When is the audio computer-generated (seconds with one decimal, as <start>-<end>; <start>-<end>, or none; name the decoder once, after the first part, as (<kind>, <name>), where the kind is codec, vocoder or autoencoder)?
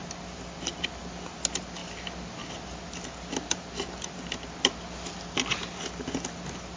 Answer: none